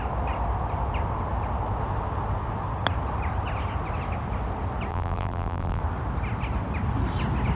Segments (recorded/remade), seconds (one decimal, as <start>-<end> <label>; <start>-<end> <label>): 0.0-4.9 recorded; 4.9-5.8 remade; 5.8-7.6 recorded